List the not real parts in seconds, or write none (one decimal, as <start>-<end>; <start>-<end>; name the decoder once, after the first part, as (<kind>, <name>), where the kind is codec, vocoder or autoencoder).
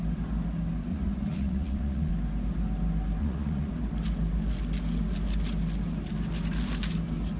0.9-2.1 (vocoder, Vocos); 3.2-3.7